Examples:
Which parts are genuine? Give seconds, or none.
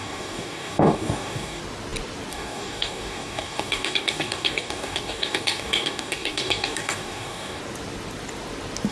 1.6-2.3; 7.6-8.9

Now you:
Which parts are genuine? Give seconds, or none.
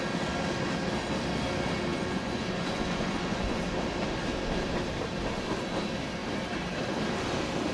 0.0-1.9; 3.6-7.7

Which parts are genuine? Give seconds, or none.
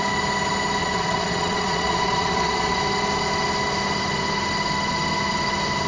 0.0-0.8; 2.8-5.9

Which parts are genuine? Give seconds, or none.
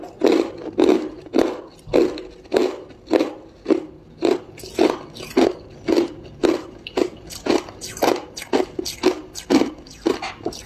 0.0-10.7